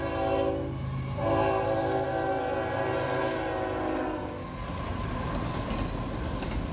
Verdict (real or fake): real